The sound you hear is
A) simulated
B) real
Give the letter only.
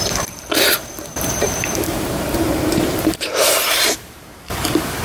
A